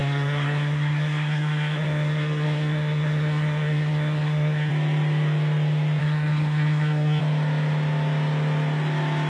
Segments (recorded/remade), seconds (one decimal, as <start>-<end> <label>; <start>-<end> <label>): 0.0-4.7 remade; 4.7-6.0 recorded; 6.0-7.2 remade; 7.2-9.3 recorded

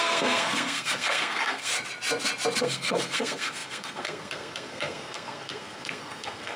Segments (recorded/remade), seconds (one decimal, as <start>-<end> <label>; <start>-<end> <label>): 0.0-1.7 remade; 1.7-2.6 recorded; 2.6-6.6 remade

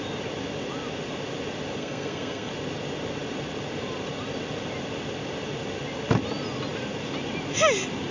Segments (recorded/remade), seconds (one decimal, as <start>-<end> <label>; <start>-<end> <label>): 0.0-1.8 recorded; 1.8-2.5 remade; 2.5-8.1 recorded